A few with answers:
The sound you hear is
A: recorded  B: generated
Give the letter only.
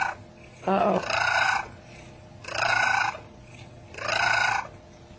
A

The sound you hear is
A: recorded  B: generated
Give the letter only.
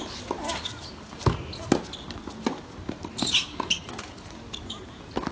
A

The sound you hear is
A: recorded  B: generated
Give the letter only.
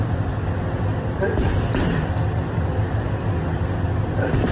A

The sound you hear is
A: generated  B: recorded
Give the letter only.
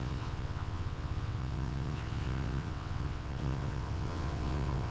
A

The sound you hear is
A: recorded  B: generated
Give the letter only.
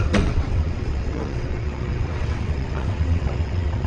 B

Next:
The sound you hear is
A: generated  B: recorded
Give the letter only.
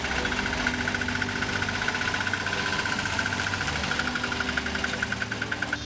B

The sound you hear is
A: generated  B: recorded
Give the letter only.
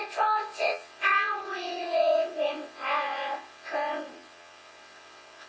A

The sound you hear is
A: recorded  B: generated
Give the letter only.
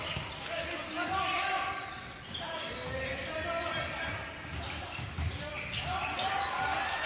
A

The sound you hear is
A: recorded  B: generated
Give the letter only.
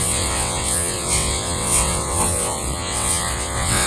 B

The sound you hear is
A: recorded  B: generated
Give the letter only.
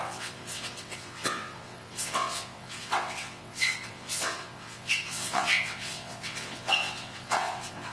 B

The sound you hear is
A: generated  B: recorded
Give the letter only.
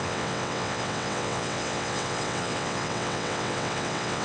A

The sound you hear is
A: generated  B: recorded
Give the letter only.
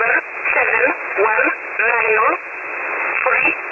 A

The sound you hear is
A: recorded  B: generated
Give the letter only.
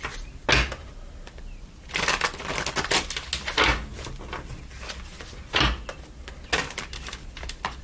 A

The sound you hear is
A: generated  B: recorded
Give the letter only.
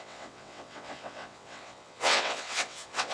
A